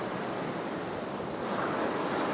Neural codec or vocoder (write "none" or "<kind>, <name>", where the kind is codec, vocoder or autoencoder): none